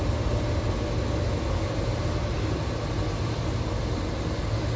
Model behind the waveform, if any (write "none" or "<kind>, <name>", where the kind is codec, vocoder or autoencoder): none